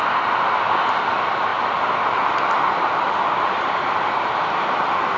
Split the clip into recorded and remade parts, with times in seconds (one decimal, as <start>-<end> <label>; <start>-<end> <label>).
0.0-5.2 recorded